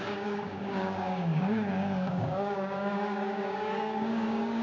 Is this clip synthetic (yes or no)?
yes